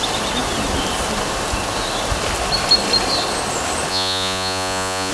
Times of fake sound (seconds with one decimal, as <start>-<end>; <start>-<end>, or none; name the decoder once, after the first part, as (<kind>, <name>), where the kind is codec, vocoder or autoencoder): 3.9-5.1 (vocoder, Vocos)